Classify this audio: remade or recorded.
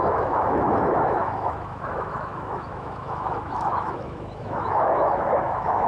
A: remade